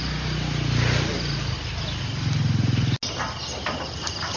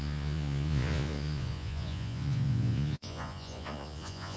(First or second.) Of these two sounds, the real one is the first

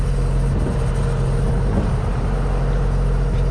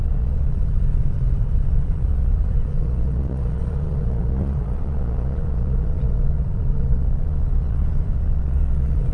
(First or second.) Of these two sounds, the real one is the first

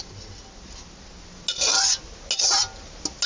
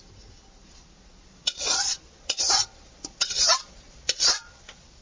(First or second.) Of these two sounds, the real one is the first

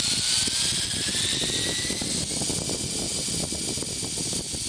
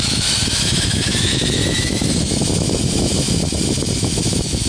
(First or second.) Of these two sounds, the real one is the first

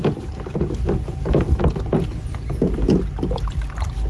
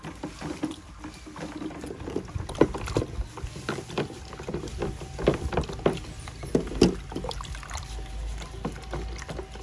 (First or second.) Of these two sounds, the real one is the second